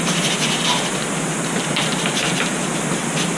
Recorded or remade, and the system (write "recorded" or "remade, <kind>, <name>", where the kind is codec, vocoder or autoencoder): recorded